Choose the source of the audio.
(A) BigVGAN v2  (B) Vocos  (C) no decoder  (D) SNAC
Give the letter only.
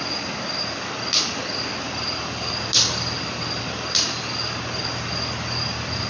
C